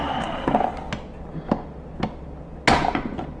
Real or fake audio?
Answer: real